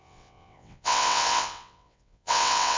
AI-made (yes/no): yes